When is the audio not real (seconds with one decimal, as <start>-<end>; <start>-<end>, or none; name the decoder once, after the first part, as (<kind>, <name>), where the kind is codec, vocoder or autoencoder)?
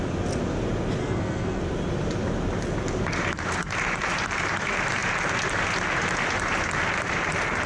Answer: 1.0-1.6 (codec, SNAC)